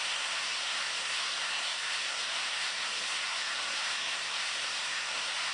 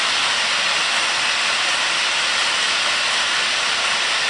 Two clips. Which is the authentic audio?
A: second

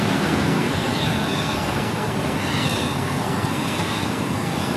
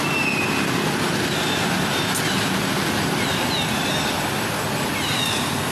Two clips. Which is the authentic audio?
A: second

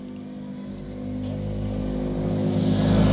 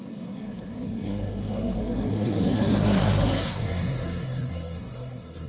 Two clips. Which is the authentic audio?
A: first